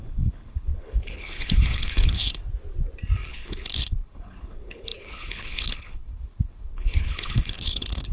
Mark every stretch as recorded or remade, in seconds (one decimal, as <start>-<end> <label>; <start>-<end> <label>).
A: 0.0-2.4 remade; 2.4-3.3 recorded; 3.3-8.1 remade